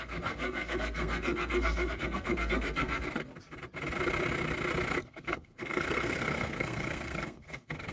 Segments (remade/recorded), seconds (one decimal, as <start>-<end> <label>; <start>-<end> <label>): 0.0-3.3 remade; 3.3-5.0 recorded; 5.0-7.9 remade